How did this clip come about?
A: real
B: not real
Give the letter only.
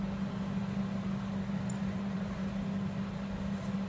A